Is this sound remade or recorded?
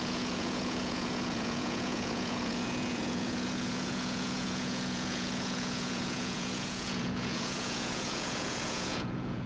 remade